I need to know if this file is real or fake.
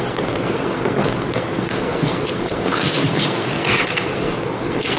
fake